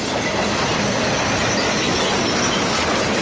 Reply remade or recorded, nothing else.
recorded